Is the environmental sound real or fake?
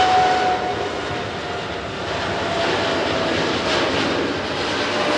real